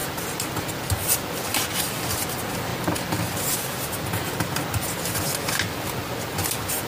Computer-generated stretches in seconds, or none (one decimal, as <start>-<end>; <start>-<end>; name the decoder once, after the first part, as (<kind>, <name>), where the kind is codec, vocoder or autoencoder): 0.0-0.5 (vocoder, BigVGAN v2)